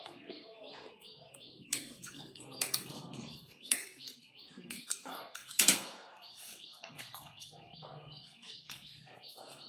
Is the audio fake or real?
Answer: fake